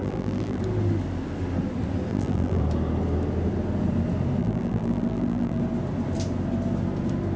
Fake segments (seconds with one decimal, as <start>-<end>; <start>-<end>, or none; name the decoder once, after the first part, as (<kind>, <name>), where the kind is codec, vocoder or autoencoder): 0.0-0.6 (vocoder, BigVGAN v2); 2.1-2.6; 4.4-5.6